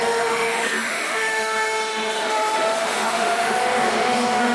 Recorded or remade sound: remade